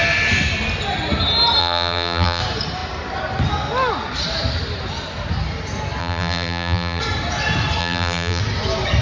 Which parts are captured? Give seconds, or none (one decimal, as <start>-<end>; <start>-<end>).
0.0-1.6; 2.4-6.0; 7.0-7.8; 8.4-9.0